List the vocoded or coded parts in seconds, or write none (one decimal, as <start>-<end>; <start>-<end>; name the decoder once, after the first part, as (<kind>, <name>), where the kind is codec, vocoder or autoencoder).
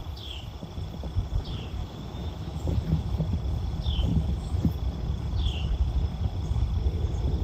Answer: 1.8-3.2 (autoencoder, DAC-VAE); 4.1-4.7